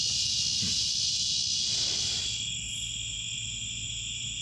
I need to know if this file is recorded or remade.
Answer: recorded